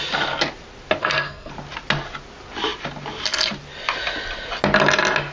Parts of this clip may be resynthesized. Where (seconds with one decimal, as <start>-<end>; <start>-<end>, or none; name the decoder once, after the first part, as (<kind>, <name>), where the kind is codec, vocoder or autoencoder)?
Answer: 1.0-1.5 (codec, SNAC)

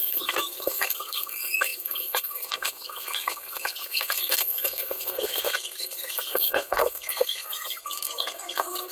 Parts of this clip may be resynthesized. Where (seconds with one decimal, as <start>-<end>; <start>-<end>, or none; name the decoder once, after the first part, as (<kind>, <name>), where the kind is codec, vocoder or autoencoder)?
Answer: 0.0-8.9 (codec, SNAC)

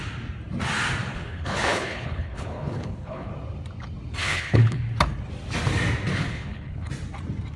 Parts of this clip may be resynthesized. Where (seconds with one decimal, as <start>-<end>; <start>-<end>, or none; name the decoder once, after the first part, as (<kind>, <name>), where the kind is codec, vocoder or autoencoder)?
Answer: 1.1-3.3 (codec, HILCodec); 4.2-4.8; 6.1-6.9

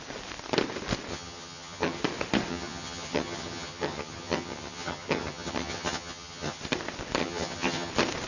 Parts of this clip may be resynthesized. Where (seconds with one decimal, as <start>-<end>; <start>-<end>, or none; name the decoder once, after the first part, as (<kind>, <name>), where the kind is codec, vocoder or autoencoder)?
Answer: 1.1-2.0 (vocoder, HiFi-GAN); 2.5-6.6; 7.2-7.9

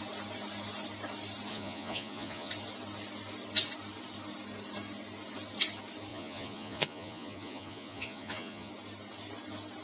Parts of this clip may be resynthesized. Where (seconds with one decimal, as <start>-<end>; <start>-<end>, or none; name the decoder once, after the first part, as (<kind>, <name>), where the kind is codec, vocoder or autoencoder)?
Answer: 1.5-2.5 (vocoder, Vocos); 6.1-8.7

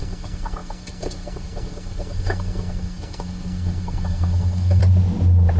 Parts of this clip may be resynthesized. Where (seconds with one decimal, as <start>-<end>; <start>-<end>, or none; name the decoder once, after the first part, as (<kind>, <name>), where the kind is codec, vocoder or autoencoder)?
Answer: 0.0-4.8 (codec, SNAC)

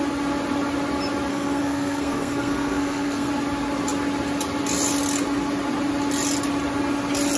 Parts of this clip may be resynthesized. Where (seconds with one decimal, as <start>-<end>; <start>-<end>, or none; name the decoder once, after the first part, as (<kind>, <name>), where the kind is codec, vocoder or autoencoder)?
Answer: 1.3-3.3 (codec, SNAC)